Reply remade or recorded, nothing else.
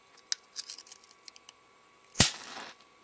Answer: recorded